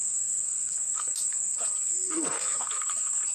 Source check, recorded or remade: remade